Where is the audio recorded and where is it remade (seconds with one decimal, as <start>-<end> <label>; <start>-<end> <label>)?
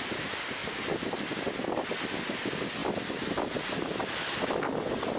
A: 0.0-5.2 recorded